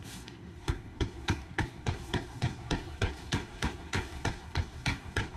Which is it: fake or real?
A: fake